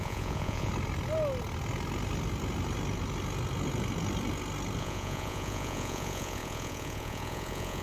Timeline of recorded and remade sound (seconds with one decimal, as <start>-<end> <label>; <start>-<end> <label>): 0.0-0.7 remade; 0.7-4.8 recorded; 4.8-7.8 remade